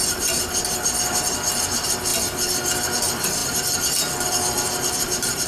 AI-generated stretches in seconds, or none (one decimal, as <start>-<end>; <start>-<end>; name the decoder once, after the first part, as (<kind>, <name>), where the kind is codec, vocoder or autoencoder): 0.0-2.1 (vocoder, BigVGAN v2); 3.0-3.4; 4.3-5.5